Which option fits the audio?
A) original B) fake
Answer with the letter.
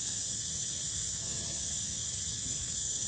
B